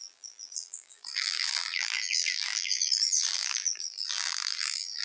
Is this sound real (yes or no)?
no